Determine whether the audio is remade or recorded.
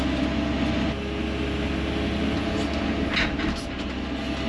recorded